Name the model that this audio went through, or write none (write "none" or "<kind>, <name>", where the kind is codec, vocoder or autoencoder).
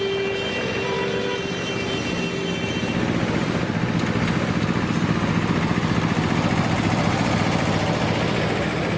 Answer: none